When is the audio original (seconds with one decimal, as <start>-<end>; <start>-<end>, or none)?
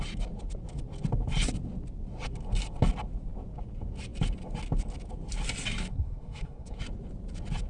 0.0-5.9; 6.8-7.7